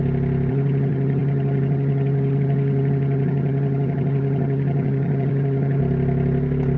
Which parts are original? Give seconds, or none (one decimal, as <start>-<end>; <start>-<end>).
0.0-0.5; 5.8-6.8